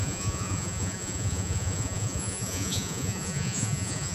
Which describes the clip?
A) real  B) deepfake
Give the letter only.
B